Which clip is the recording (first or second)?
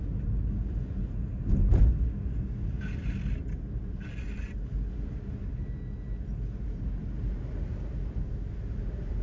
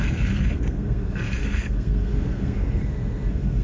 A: first